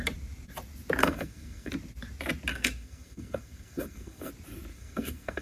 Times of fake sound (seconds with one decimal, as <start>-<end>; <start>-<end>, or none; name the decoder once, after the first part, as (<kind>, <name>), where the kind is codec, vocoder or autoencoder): 1.0-1.7 (codec, SNAC); 2.5-4.3; 4.7-5.4